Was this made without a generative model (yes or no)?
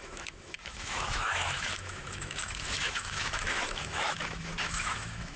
no